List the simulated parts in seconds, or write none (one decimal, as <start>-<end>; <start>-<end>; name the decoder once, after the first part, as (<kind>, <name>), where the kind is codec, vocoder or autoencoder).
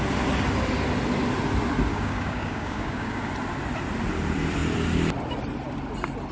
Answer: 1.9-3.3 (codec, DAC)